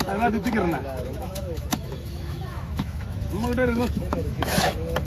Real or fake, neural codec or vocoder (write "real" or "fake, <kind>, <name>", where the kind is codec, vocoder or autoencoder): fake, autoencoder, DAC-VAE